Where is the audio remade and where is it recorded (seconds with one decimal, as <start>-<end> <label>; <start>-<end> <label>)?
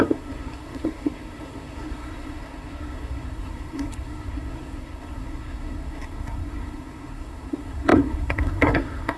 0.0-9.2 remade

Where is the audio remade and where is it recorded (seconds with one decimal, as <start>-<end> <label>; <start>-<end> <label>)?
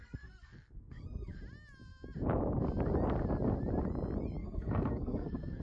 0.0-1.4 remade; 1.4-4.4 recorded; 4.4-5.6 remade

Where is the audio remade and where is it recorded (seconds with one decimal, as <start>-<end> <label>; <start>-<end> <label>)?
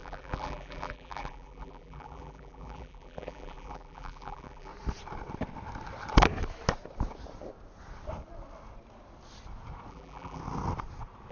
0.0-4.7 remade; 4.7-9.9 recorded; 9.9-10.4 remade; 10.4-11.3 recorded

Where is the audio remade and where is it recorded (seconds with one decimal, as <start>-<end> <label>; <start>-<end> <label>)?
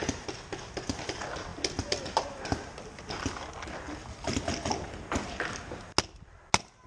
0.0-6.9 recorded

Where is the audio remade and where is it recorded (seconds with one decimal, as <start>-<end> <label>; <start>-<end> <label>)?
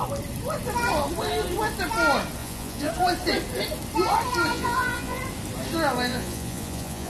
0.0-2.4 recorded; 2.4-2.9 remade; 2.9-4.5 recorded; 4.5-5.2 remade; 5.2-6.1 recorded; 6.1-7.1 remade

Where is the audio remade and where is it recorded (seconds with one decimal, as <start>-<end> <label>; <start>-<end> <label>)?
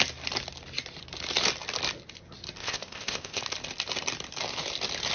0.0-2.6 recorded; 2.6-3.4 remade; 3.4-5.1 recorded